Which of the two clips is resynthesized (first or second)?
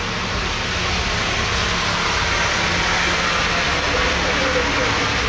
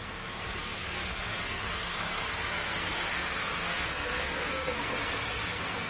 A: second